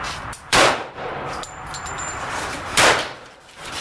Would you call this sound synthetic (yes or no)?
yes